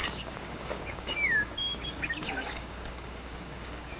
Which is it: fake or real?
fake